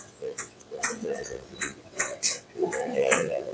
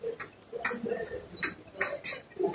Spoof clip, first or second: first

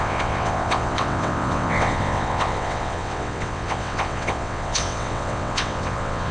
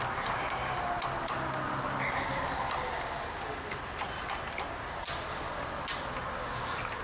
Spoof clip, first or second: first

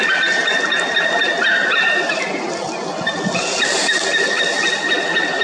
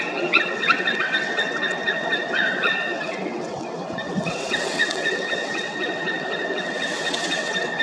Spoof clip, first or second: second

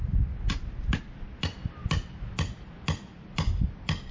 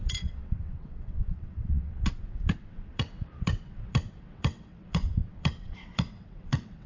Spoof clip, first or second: second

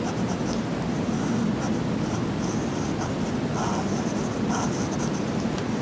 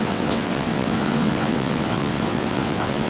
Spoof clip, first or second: second